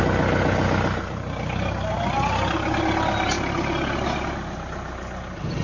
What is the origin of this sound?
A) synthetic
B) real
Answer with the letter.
B